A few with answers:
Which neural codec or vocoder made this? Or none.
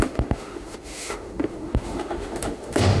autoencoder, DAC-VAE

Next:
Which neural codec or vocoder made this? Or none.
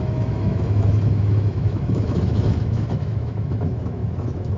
autoencoder, DAC-VAE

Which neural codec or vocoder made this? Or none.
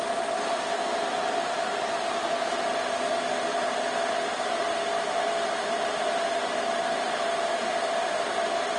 none